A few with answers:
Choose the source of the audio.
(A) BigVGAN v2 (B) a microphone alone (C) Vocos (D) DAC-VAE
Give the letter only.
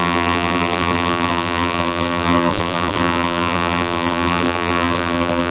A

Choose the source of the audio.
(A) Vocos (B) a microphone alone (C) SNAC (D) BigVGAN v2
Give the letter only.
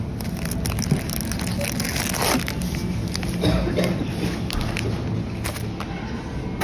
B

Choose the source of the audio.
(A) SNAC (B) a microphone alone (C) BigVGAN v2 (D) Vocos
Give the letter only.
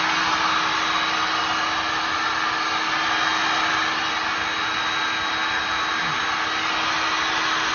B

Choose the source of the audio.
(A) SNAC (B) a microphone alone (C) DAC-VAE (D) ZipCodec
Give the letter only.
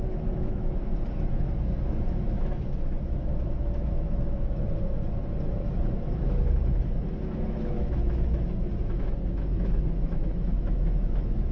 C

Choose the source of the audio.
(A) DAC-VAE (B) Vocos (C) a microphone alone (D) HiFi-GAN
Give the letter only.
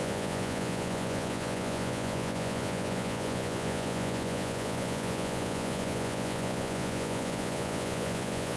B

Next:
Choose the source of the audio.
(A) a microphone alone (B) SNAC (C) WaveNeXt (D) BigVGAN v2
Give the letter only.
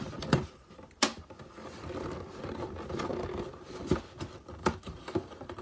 A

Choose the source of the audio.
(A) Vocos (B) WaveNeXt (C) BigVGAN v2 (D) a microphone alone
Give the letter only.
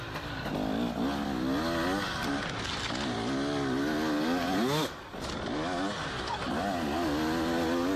D